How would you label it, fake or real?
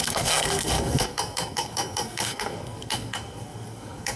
fake